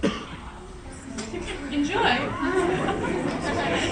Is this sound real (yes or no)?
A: yes